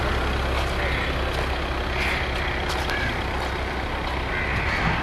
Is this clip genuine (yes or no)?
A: yes